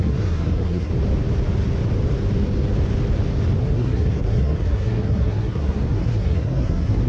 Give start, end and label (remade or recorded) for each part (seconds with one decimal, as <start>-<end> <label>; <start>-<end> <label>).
0.0-0.9 remade; 0.9-3.6 recorded; 3.6-7.1 remade